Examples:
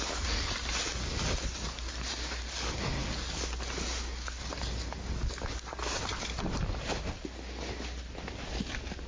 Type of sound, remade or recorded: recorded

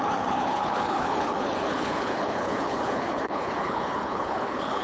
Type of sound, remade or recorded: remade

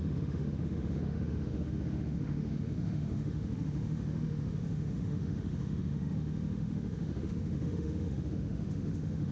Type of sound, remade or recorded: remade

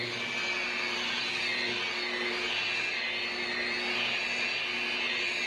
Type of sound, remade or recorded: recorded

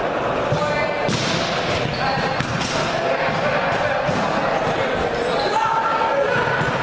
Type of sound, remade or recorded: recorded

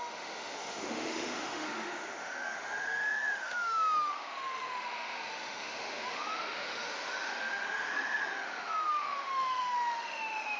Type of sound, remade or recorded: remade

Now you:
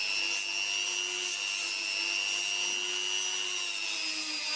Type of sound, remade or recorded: recorded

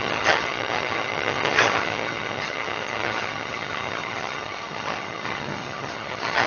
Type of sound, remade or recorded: remade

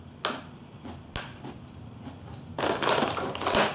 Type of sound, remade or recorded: recorded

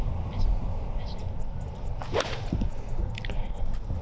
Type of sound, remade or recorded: recorded